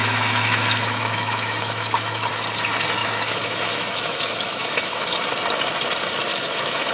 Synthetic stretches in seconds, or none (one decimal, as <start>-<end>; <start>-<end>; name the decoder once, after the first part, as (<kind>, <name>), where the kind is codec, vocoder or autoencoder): 0.0-2.3 (autoencoder, DAC-VAE); 3.0-5.1; 6.3-6.9